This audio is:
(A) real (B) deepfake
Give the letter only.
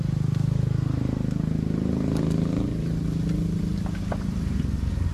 A